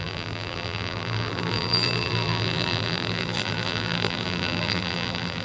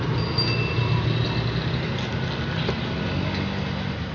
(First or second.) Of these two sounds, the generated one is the first